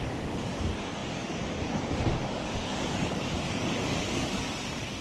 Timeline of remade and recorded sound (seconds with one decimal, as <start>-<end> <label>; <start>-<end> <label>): 0.0-5.0 remade